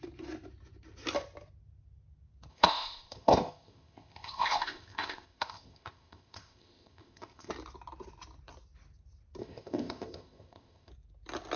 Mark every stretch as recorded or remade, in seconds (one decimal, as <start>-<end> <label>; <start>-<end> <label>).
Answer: 0.0-2.5 recorded; 2.5-7.5 remade; 7.5-9.4 recorded; 9.4-10.9 remade; 10.9-11.6 recorded